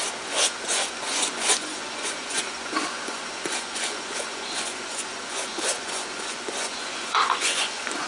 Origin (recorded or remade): remade